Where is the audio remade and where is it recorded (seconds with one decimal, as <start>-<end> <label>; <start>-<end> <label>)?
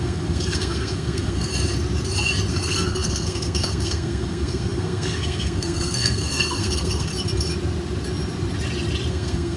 0.0-1.5 remade; 1.5-2.5 recorded; 2.5-7.1 remade; 7.1-9.1 recorded; 9.1-9.6 remade